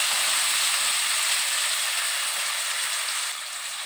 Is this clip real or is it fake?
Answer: real